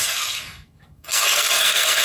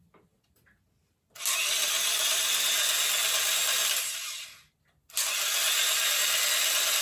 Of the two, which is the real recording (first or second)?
second